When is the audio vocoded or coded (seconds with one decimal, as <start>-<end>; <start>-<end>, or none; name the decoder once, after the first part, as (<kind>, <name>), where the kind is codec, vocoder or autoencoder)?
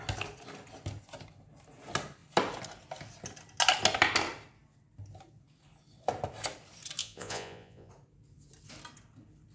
7.0-7.9 (vocoder, Vocos)